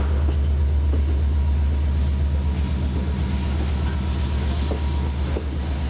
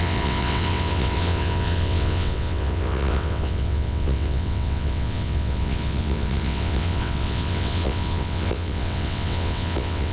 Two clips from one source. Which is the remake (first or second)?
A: second